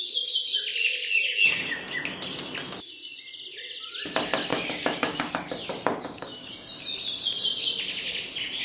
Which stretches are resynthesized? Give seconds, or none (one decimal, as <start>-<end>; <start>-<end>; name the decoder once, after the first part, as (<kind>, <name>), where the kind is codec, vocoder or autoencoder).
4.5-5.3 (codec, DAC); 5.7-6.5